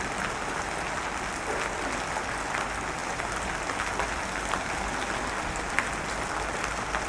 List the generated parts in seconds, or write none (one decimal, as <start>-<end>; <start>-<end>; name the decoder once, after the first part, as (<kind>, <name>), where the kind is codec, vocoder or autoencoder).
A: none